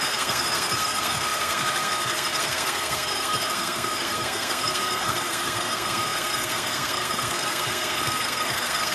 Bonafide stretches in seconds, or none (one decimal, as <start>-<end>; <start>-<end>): none

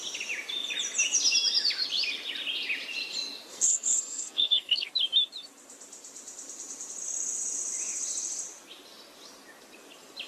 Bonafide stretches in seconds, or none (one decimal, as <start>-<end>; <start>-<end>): 0.0-3.5; 4.9-10.3

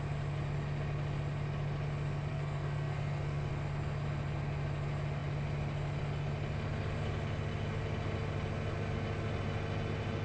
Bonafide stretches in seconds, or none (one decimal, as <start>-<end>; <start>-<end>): 0.0-2.3; 3.5-10.2

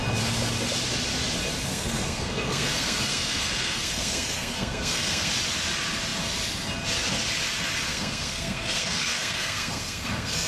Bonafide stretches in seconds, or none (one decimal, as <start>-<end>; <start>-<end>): 0.0-1.7; 5.3-7.9

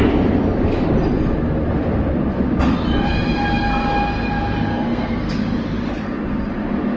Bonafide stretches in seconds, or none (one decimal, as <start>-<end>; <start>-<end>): 0.0-4.7; 5.3-7.0

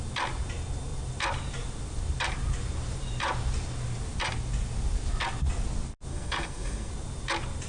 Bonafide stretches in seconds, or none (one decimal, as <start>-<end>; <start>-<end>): 0.0-6.1; 6.9-7.7

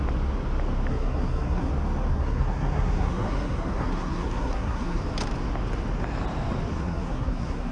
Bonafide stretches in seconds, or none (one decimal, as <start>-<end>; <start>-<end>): 0.0-0.9; 1.7-2.1; 5.0-6.7